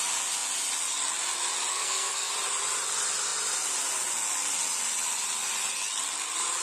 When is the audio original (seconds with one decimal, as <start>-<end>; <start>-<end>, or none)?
0.0-1.7; 2.3-6.6